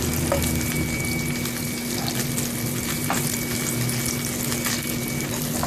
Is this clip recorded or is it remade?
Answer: recorded